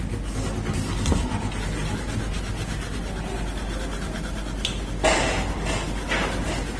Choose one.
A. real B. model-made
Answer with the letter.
A